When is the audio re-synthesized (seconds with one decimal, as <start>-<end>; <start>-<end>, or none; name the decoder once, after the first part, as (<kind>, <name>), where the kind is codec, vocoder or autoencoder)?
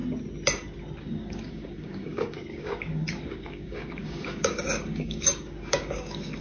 1.0-6.4 (codec, DAC)